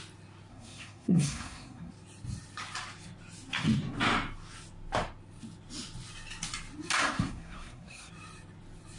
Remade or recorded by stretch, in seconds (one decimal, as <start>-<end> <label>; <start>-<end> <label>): 0.0-0.5 recorded; 0.5-1.9 remade; 1.9-7.0 recorded; 7.0-8.1 remade; 8.1-9.0 recorded